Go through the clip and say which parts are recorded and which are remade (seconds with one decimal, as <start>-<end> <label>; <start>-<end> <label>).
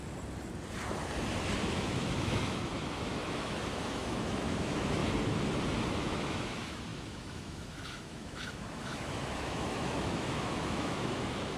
0.0-1.6 recorded; 1.6-5.0 remade; 5.0-5.9 recorded; 5.9-11.6 remade